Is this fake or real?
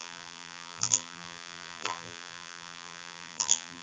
fake